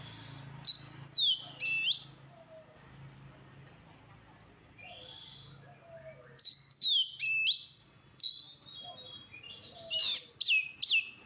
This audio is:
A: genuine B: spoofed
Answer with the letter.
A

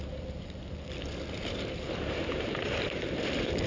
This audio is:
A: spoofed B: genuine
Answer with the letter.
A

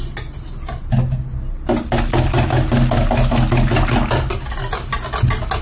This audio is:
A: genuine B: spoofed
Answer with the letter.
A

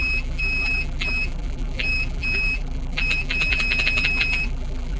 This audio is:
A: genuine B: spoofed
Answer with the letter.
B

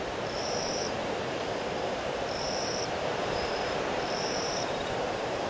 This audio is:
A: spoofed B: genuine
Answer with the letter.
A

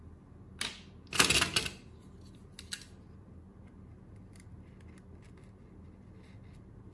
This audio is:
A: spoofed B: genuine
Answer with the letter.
B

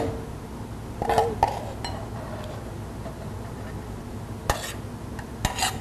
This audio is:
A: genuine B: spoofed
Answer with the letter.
A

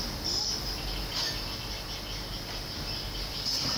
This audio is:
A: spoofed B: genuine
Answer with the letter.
B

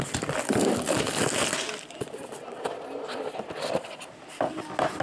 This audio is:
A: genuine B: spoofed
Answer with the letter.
B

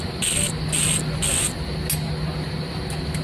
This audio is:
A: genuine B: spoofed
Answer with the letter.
A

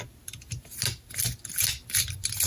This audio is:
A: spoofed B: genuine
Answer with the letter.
B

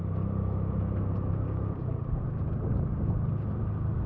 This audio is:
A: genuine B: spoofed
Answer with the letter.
A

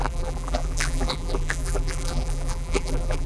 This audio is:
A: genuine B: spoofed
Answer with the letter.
B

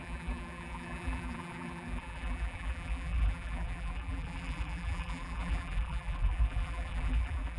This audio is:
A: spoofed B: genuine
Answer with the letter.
A